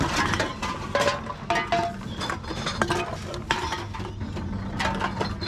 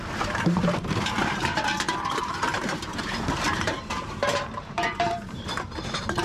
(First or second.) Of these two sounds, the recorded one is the first